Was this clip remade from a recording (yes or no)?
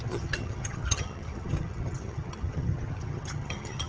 yes